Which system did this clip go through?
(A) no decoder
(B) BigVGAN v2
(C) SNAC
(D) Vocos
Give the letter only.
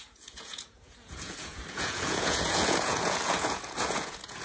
D